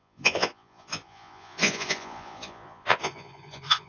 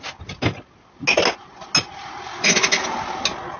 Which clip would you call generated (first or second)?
first